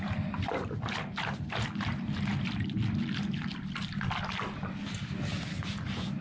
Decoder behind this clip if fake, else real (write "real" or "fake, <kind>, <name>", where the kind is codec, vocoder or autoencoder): real